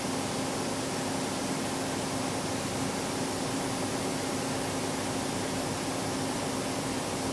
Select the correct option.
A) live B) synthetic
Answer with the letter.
A